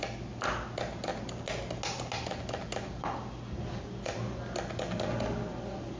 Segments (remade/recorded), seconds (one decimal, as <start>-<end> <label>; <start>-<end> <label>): 0.0-6.0 recorded